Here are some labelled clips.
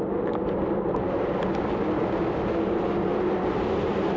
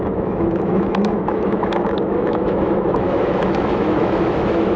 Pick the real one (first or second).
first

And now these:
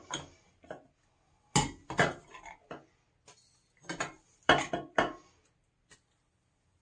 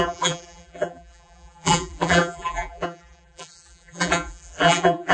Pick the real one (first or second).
first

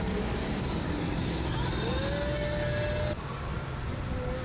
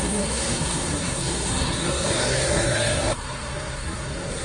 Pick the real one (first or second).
first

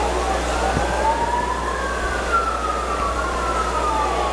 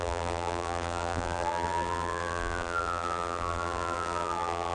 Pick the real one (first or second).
first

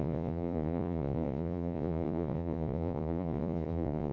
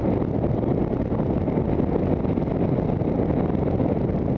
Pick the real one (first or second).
second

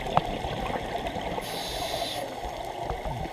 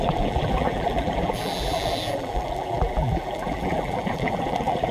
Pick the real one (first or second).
first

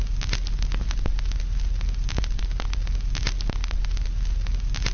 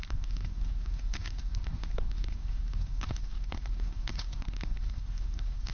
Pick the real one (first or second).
first